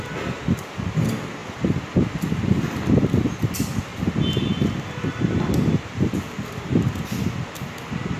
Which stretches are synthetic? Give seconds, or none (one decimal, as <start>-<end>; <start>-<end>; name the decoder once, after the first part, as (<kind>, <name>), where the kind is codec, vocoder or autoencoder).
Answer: none